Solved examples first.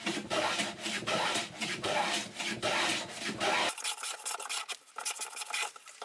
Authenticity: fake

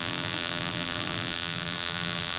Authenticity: fake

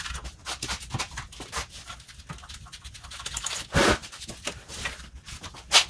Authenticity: real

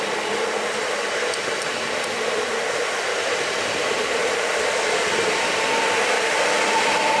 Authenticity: fake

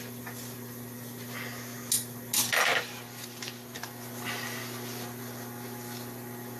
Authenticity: real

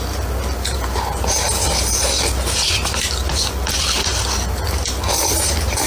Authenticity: real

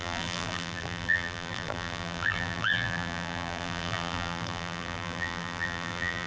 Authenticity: fake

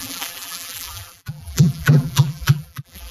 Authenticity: fake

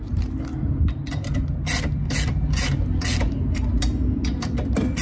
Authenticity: real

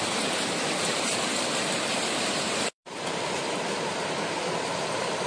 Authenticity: fake